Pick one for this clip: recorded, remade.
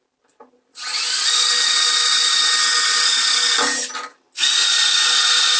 recorded